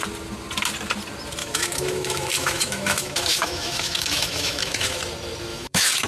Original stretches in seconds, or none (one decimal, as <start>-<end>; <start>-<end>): 0.0-1.4; 5.0-5.5